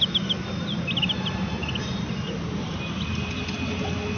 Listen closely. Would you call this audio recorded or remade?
recorded